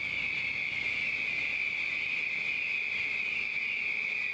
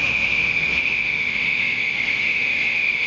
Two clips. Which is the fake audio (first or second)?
second